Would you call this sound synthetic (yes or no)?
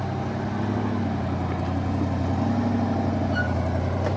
no